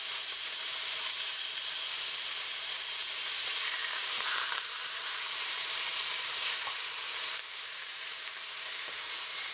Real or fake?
fake